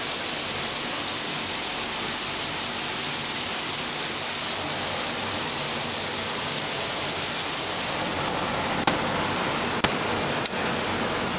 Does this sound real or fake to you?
real